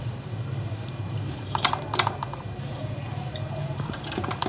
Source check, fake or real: fake